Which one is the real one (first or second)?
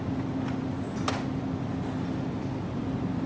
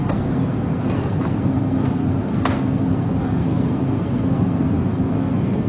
first